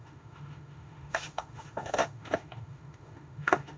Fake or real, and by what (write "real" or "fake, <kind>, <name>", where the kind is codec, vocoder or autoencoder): fake, autoencoder, DAC-VAE